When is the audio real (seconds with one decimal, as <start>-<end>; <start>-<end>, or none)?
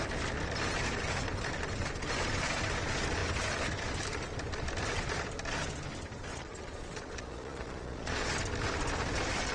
0.0-6.3; 8.3-9.5